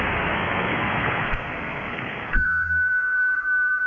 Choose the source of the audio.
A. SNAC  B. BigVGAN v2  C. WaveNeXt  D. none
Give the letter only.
A